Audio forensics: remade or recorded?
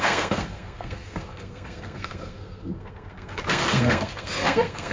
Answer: remade